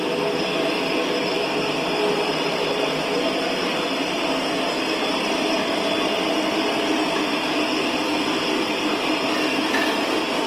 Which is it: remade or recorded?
remade